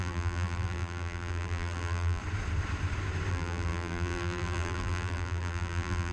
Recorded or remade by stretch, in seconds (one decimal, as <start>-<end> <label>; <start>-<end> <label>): 0.0-2.2 remade; 2.2-3.3 recorded; 3.3-6.1 remade